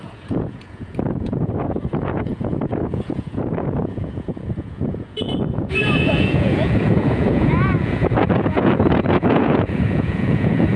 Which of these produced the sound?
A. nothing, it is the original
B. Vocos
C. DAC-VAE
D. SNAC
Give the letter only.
B